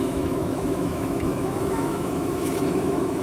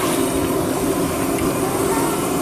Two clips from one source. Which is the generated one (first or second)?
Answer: first